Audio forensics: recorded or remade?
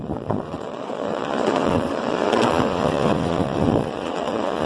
remade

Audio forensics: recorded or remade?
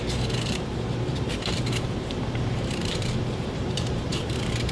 remade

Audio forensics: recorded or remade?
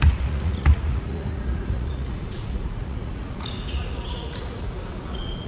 remade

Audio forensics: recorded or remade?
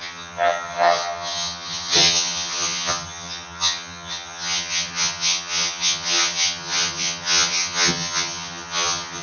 remade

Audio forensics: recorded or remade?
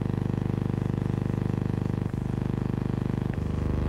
remade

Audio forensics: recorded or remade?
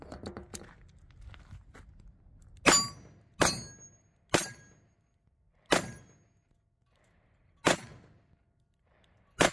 recorded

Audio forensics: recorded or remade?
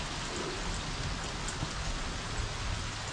recorded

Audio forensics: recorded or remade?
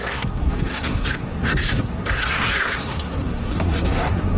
remade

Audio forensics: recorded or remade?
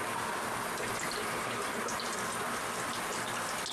recorded